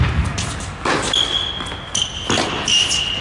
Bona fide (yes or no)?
yes